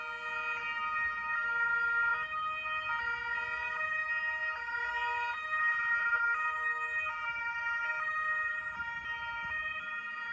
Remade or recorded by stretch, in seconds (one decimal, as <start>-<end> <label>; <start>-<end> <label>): 0.0-5.7 recorded; 5.7-6.2 remade; 6.2-10.3 recorded